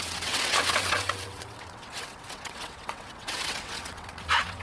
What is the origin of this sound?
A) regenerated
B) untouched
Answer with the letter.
A